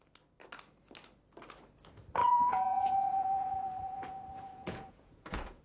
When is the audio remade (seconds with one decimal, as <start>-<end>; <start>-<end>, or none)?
2.2-5.6